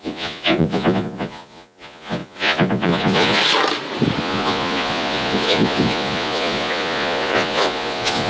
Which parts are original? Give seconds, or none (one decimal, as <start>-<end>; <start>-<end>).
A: 3.4-4.2